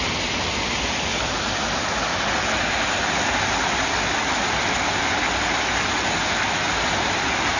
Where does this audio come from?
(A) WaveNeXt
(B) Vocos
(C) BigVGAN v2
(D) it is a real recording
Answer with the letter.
D